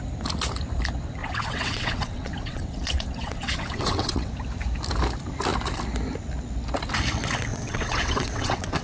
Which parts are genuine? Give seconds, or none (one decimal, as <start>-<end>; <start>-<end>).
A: 0.0-1.2; 4.3-7.5